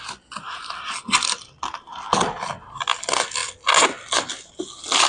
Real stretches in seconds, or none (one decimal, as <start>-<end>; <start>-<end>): 0.0-5.1